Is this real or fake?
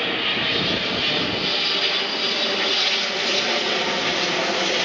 real